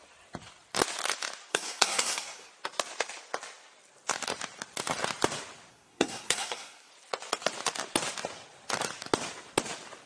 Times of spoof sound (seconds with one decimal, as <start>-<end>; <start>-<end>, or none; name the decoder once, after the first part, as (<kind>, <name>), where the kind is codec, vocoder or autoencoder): 1.5-2.5 (codec, SNAC); 5.7-6.9

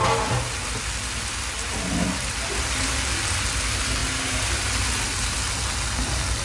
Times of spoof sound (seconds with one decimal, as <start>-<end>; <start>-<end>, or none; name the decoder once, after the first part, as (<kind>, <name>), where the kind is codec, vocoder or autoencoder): 1.7-2.9 (vocoder, BigVGAN v2)